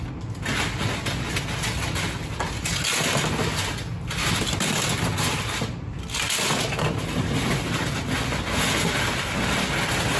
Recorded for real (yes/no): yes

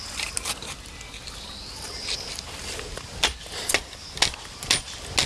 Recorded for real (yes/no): yes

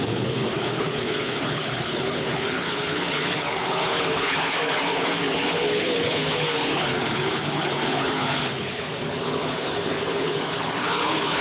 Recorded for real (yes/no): no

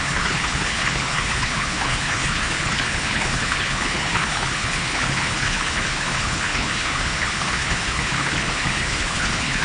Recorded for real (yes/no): no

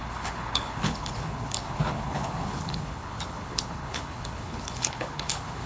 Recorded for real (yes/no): no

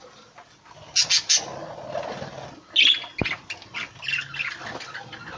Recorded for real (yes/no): yes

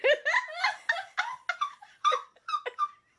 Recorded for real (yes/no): yes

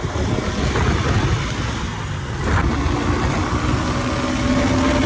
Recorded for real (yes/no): yes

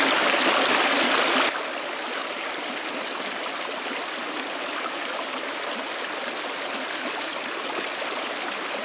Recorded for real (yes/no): yes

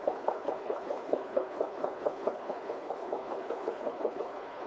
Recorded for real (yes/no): no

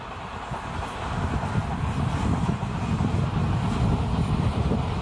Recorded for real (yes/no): yes